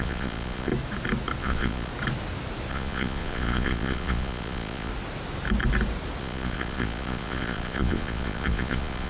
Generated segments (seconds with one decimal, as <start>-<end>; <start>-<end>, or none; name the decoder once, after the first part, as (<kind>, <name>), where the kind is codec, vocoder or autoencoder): 0.0-0.7 (vocoder, Vocos); 1.4-1.9; 2.7-4.9; 6.2-9.1